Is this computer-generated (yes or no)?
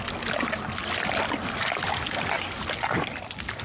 no